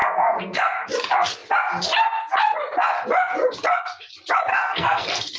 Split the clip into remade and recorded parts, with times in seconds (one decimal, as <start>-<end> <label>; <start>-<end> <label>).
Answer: 0.0-0.9 remade; 0.9-4.5 recorded; 4.5-5.4 remade